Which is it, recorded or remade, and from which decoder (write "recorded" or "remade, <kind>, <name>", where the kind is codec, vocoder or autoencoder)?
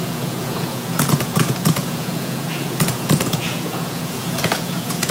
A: remade, vocoder, Vocos